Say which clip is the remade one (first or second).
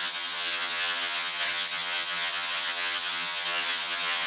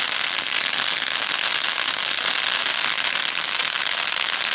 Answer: first